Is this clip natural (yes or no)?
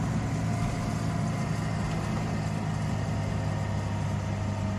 yes